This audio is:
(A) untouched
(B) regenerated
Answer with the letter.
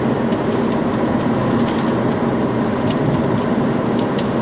A